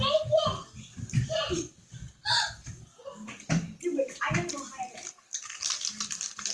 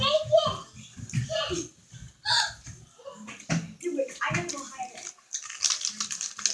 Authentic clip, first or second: second